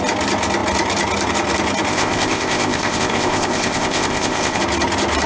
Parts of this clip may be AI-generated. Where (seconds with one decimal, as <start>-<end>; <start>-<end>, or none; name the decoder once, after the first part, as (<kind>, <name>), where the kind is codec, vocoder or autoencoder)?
1.9-4.6 (codec, ZipCodec)